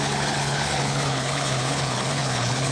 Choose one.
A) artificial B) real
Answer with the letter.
A